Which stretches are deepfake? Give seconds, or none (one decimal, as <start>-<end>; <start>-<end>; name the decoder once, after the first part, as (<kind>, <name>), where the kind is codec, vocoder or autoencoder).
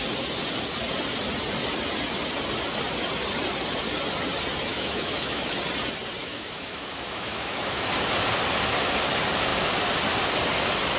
4.7-5.5 (autoencoder, DAC-VAE); 6.2-7.8